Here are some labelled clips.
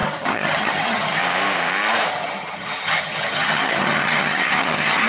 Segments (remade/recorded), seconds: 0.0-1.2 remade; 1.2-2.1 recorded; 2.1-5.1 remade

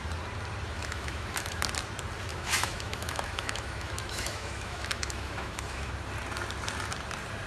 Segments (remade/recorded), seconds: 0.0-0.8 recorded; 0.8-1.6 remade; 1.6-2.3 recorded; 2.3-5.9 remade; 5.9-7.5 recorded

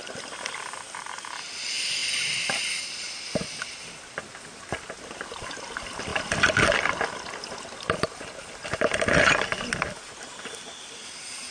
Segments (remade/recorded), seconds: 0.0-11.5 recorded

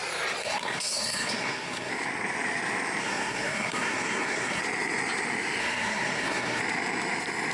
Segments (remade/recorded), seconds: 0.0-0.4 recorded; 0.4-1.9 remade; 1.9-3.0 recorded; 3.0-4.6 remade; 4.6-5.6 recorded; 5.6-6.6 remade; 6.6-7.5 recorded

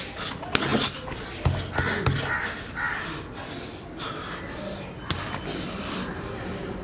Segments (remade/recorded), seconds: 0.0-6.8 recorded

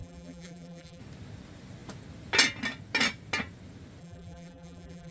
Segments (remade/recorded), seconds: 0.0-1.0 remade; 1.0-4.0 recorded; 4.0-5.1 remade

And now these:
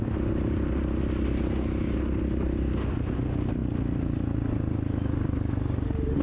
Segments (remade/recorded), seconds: 0.0-6.2 recorded

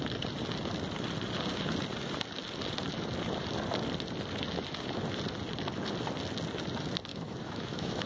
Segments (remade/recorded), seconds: 0.0-7.1 recorded; 7.1-8.1 remade